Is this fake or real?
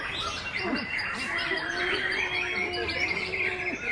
fake